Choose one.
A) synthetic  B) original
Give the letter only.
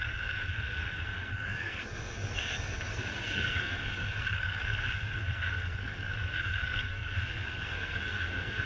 A